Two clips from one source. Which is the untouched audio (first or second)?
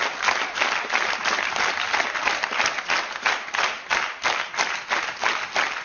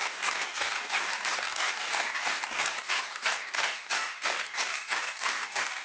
first